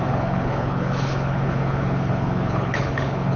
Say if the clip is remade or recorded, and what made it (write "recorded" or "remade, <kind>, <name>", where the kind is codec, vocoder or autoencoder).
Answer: remade, codec, HILCodec